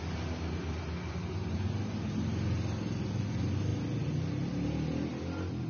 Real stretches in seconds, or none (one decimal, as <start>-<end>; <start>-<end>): 0.0-5.7